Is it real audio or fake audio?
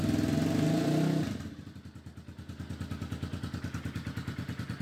real